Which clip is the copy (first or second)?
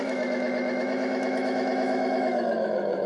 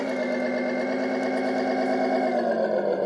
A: first